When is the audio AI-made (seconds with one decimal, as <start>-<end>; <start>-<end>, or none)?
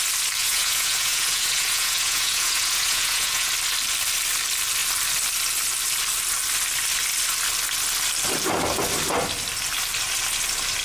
0.4-3.5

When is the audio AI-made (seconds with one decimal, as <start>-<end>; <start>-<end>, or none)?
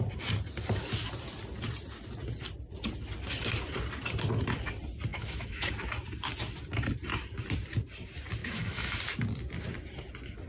5.1-5.7; 8.4-9.0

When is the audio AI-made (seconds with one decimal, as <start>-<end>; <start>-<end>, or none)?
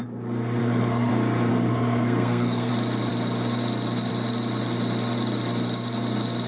0.6-1.1; 1.5-2.7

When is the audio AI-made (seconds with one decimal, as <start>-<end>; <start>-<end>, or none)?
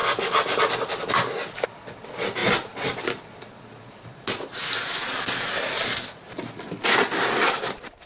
none